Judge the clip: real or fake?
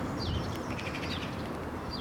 fake